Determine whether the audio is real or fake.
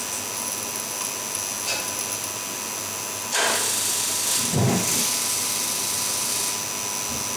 real